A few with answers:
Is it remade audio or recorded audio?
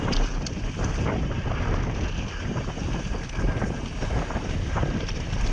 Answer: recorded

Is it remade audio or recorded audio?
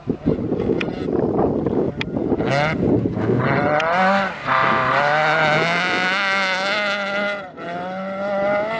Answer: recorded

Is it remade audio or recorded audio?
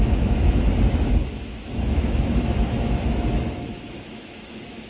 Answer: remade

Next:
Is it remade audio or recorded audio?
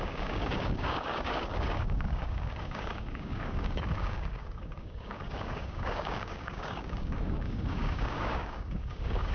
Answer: remade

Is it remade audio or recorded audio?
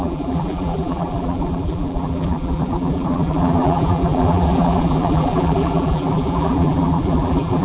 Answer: remade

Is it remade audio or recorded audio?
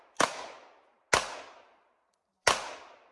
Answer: recorded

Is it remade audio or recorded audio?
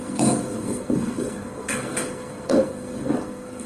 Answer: remade